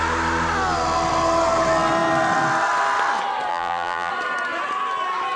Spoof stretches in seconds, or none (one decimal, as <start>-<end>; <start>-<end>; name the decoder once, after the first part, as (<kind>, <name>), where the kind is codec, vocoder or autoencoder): 3.5-4.1 (vocoder, BigVGAN v2)